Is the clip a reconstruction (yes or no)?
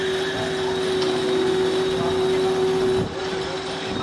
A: no